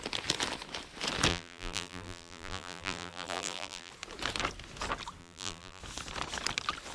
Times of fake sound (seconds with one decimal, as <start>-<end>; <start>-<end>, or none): 1.3-3.9; 5.2-5.8